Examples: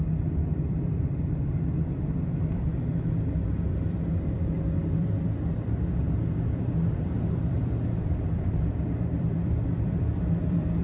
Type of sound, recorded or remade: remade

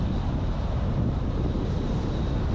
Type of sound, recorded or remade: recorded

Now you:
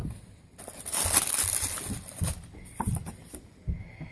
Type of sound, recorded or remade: recorded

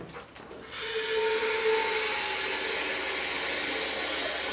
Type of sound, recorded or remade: recorded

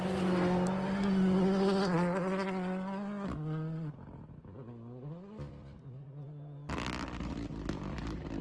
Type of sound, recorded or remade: recorded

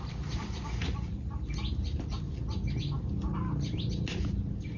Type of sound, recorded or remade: recorded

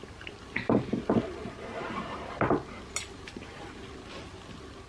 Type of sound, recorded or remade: recorded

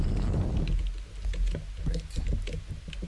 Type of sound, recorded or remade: recorded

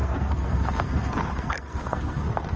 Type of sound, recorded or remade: remade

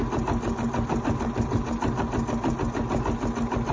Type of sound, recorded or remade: recorded